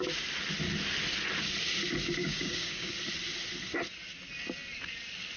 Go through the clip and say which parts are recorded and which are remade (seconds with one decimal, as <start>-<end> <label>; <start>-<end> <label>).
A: 0.0-2.2 recorded; 2.2-2.9 remade; 2.9-5.4 recorded